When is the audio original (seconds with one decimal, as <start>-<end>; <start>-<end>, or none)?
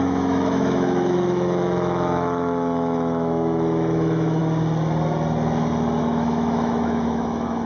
4.4-6.0